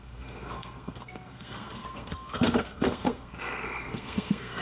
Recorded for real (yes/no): no